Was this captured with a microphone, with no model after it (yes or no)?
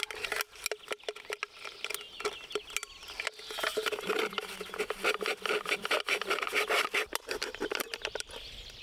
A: yes